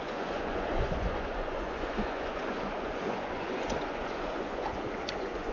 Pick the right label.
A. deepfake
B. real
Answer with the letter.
A